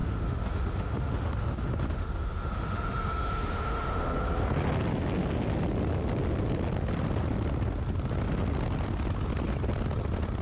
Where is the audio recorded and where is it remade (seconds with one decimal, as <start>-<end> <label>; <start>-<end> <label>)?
0.0-4.0 remade; 4.0-10.4 recorded